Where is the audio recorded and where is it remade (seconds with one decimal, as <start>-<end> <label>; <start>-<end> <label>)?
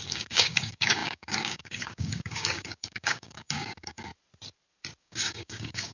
0.0-4.1 remade; 4.1-5.0 recorded; 5.0-5.9 remade